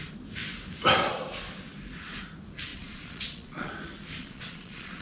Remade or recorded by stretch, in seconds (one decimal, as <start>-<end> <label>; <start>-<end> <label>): 0.0-2.7 recorded; 2.7-3.7 remade; 3.7-4.2 recorded; 4.2-5.0 remade